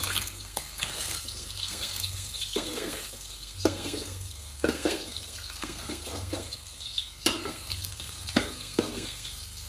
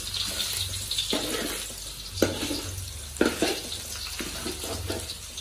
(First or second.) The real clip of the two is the second